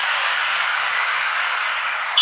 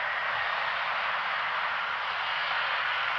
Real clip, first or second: second